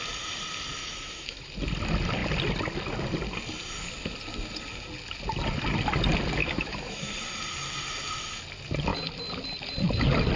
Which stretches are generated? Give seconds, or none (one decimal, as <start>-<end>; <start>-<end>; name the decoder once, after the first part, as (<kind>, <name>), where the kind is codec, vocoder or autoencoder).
0.8-1.5 (autoencoder, DAC-VAE); 6.4-7.1